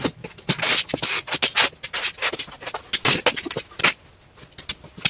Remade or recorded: recorded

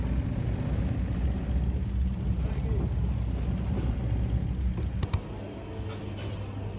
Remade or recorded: recorded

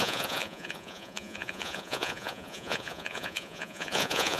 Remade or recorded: remade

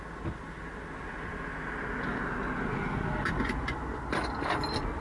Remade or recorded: recorded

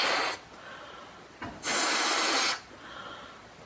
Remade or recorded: recorded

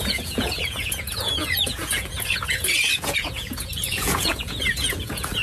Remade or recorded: remade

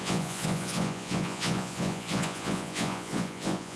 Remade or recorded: remade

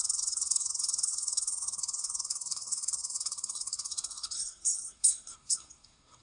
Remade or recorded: remade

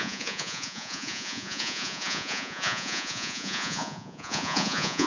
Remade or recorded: remade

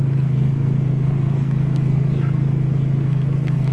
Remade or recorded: remade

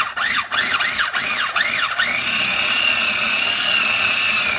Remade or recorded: recorded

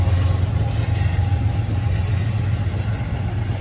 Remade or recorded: recorded